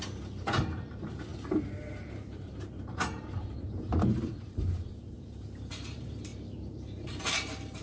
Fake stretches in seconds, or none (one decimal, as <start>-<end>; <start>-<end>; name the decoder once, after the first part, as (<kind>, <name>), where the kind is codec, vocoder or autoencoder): 0.0-6.3 (vocoder, BigVGAN v2); 7.3-7.8